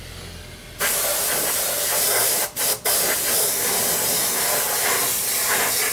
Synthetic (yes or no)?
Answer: yes